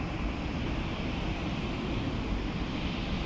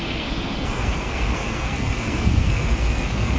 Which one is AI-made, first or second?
second